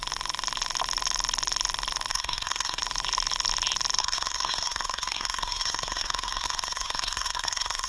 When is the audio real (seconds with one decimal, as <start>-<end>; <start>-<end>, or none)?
0.0-2.1; 2.8-4.0